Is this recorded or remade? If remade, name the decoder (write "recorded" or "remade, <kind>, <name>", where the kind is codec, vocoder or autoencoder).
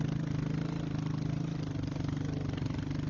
recorded